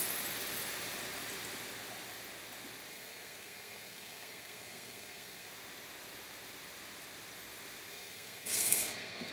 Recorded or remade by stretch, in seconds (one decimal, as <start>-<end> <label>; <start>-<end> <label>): 0.0-2.9 recorded; 2.9-5.5 remade; 5.5-7.9 recorded; 7.9-9.3 remade